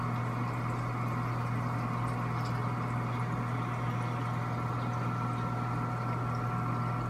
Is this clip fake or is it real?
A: real